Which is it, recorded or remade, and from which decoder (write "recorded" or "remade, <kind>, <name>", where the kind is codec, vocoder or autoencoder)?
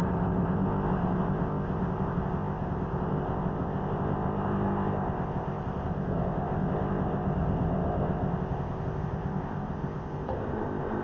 remade, codec, ZipCodec